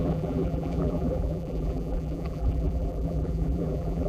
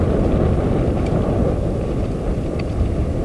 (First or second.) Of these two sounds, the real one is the second